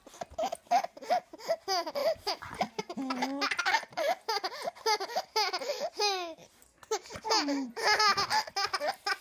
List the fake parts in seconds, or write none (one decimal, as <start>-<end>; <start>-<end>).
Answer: 2.0-2.8